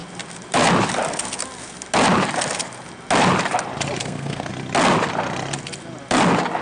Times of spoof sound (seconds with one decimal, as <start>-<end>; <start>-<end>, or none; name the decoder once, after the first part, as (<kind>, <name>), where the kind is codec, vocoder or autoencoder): 4.0-4.5 (codec, SNAC)